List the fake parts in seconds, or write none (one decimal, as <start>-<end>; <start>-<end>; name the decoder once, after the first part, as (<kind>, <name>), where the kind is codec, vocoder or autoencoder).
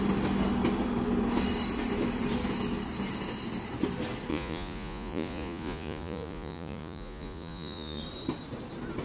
4.3-8.0 (vocoder, Vocos)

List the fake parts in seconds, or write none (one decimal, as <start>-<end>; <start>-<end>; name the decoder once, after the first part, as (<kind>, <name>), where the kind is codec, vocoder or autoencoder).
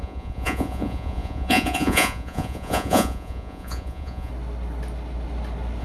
0.0-4.3 (vocoder, Vocos)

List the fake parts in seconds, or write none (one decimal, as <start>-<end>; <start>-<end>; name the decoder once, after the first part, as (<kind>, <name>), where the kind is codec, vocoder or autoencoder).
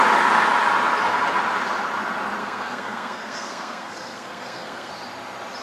2.4-4.9 (codec, SNAC)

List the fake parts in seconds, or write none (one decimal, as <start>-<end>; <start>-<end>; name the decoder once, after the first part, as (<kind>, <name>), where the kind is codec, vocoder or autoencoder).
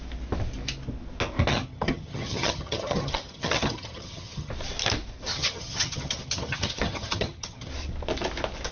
1.5-4.5 (vocoder, HiFi-GAN); 5.3-7.7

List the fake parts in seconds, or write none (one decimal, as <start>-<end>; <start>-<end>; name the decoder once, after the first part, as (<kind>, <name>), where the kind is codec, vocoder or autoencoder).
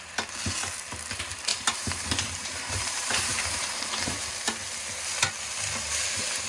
1.5-4.3 (vocoder, BigVGAN v2)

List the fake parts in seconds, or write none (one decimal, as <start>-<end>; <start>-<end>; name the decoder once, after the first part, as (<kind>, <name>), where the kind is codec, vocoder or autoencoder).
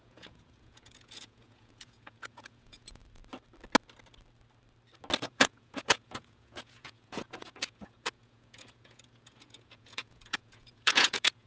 0.0-3.0 (vocoder, Vocos); 5.2-11.5